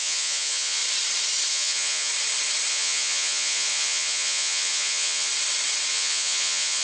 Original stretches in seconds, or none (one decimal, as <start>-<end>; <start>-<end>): 0.8-1.5; 2.1-2.7; 5.3-5.9